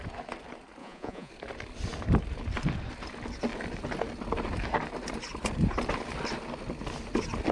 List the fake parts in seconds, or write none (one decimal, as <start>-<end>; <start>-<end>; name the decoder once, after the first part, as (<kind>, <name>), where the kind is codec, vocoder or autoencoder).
0.8-1.3 (vocoder, Vocos)